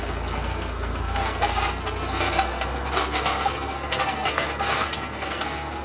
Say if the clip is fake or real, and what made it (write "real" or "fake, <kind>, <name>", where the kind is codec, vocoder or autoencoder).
fake, codec, SNAC